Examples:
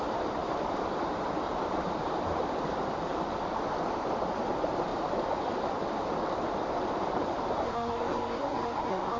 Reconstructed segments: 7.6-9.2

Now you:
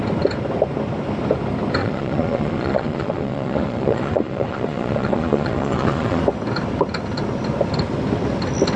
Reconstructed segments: 1.8-6.2

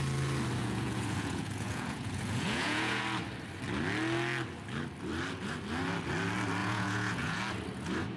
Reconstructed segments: 0.6-3.0; 6.6-7.4

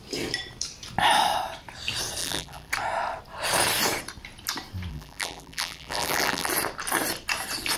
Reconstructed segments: 2.2-2.7; 4.9-6.5

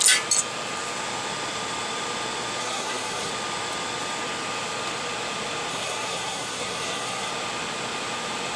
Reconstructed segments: 2.6-3.3; 5.7-7.3